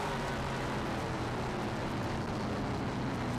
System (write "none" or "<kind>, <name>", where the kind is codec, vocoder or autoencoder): none